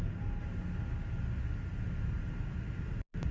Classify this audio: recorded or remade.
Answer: recorded